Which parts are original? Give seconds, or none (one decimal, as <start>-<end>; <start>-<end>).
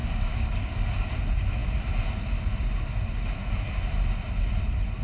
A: 1.1-5.0